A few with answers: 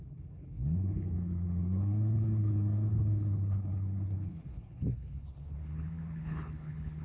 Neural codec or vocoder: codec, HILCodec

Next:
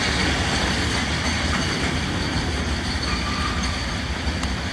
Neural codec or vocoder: none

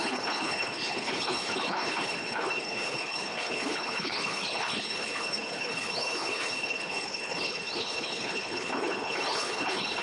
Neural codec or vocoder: codec, HILCodec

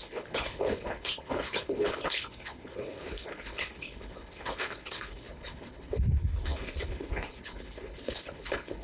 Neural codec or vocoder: codec, HILCodec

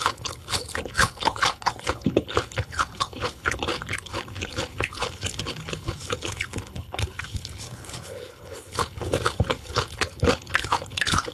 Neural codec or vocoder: codec, HILCodec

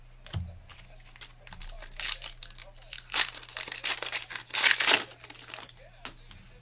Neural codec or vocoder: none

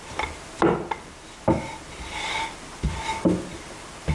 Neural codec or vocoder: none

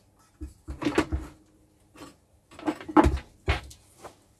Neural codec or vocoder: none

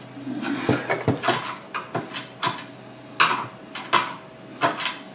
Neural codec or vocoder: none